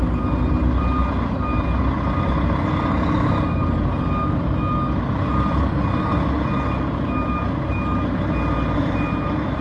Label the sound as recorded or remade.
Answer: recorded